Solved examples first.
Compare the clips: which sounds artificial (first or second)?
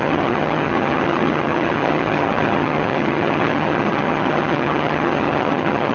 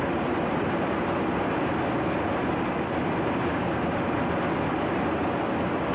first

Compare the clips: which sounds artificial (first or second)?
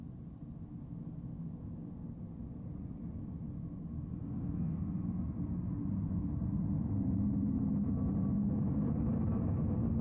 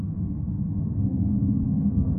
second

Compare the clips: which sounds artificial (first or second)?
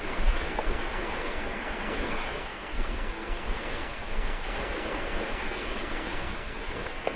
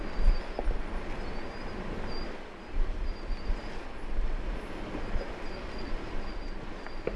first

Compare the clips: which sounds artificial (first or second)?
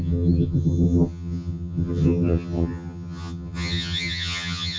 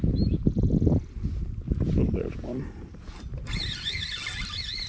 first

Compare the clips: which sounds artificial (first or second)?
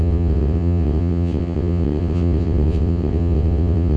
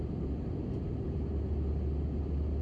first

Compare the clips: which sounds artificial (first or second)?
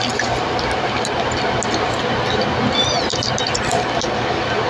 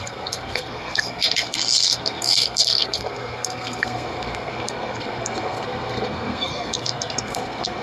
second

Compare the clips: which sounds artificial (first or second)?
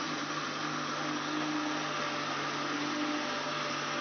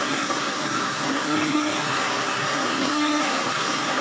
second